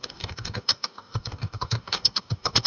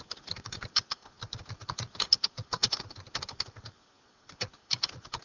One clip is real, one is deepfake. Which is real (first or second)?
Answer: second